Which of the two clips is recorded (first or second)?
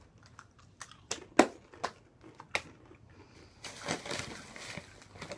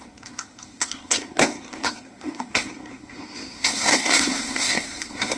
first